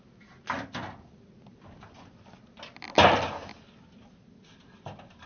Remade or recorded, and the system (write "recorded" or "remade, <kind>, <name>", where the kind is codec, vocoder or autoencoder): recorded